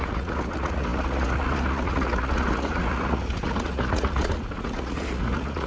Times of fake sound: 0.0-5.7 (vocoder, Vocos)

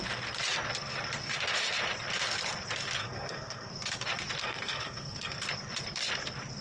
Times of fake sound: 3.0-3.7 (codec, SNAC); 4.4-5.4